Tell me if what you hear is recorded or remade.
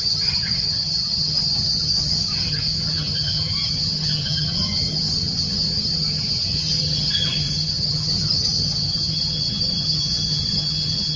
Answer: remade